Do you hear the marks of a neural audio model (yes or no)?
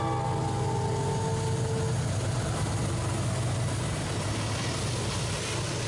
no